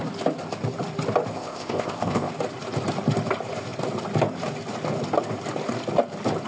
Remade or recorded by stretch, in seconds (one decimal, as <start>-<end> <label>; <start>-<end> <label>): 0.0-1.3 recorded; 1.3-2.3 remade; 2.3-6.5 recorded